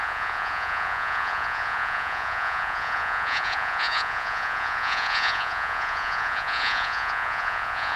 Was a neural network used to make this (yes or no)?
yes